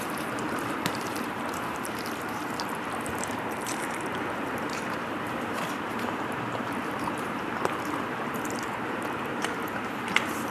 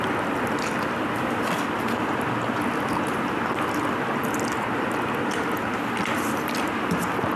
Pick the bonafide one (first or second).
second